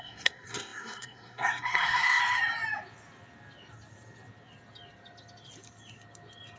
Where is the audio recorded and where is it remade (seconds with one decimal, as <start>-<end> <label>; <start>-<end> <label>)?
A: 0.0-2.2 remade; 2.2-6.6 recorded